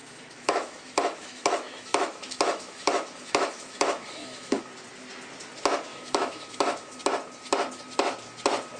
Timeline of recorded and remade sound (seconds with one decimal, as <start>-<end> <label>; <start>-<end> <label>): 0.0-4.6 remade; 4.6-5.9 recorded; 5.9-7.0 remade; 7.0-8.8 recorded